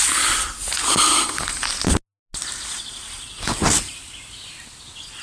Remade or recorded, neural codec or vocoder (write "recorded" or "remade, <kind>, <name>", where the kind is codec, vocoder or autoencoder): recorded